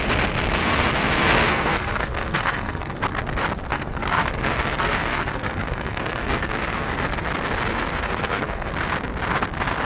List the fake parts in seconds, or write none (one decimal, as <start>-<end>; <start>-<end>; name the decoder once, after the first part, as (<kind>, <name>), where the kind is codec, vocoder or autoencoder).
0.6-3.0 (codec, SNAC); 3.7-6.9; 7.7-8.7